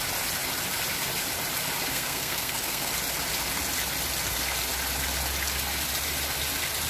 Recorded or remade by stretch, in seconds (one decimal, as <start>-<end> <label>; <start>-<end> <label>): 0.0-1.9 recorded; 1.9-2.9 remade; 2.9-6.9 recorded